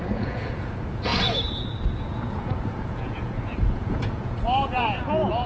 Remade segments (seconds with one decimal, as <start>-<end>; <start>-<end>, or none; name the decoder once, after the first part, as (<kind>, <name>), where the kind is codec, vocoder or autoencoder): 0.0-1.1 (vocoder, Vocos); 2.0-5.5